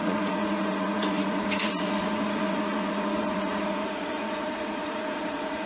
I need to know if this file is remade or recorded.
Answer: remade